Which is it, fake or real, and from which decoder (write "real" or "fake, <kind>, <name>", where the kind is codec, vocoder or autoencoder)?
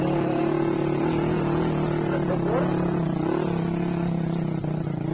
real